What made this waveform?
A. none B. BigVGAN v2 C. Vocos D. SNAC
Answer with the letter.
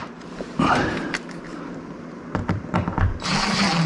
B